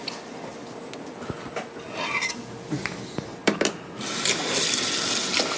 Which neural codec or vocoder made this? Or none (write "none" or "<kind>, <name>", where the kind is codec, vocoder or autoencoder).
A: none